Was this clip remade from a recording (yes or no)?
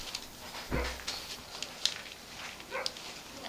no